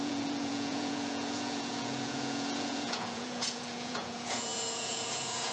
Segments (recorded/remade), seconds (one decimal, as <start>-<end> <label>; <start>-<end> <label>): 0.0-5.5 remade